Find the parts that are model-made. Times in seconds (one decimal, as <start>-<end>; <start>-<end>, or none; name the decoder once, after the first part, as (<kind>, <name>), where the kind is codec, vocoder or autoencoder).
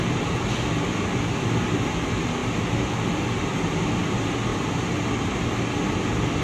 none